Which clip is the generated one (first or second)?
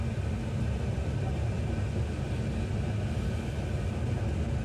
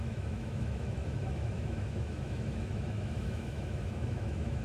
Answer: second